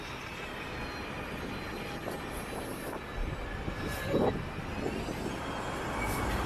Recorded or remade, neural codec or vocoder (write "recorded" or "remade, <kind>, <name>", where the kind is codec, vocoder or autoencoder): recorded